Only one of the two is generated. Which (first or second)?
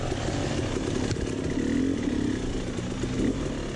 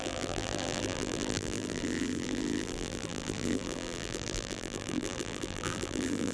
second